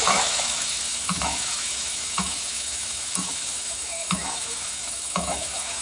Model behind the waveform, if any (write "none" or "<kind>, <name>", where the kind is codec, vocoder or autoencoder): autoencoder, DAC-VAE